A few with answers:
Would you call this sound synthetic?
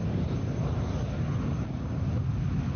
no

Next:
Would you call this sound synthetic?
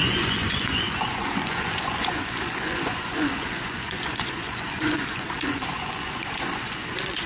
yes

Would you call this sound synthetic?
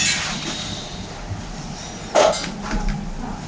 no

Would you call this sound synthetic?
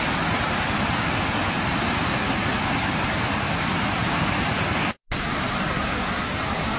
no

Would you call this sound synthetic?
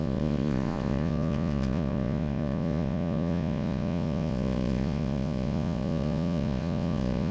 yes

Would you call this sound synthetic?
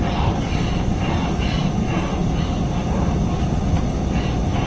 no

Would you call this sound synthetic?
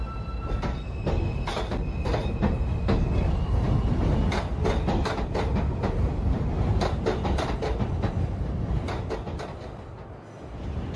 no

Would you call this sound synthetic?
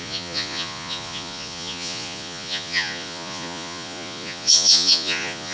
yes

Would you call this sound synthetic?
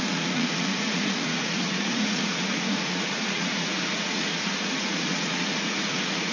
yes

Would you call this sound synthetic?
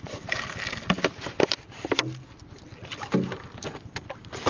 no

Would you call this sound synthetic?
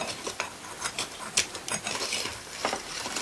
no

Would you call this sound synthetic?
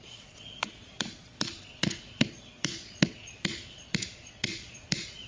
yes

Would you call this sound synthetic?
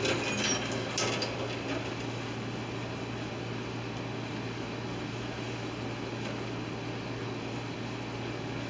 no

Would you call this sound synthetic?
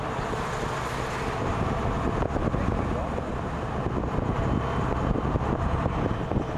no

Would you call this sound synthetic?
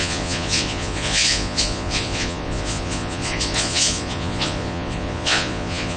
yes